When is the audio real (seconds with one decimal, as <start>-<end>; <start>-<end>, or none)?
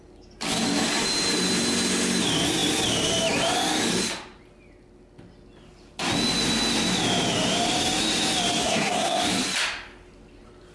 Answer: 0.0-8.6; 9.2-10.7